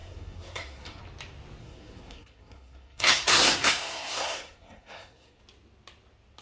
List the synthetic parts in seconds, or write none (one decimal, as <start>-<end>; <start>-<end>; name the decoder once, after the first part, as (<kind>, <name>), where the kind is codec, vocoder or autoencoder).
0.0-1.0 (codec, SNAC); 1.6-5.4